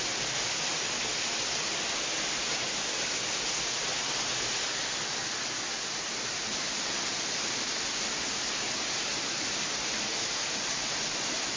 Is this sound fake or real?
real